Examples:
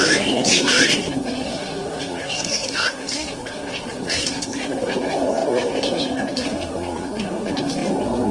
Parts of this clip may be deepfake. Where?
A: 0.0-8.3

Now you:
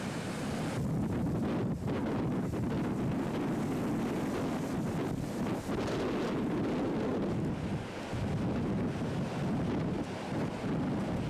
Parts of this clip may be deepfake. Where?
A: none

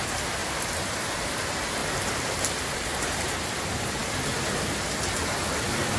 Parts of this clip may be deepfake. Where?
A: 0.4-1.1; 1.8-3.2

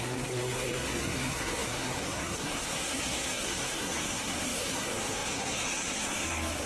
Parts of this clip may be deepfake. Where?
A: 0.0-6.7